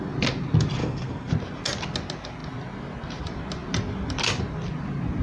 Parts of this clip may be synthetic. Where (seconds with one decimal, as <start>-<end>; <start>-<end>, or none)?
0.8-1.3